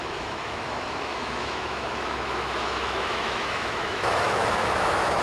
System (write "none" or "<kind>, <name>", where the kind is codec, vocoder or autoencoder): autoencoder, DAC-VAE